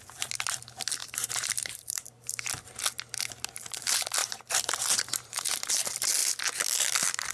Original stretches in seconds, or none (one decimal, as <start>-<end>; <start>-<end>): 0.0-1.0; 2.4-4.2; 5.7-7.3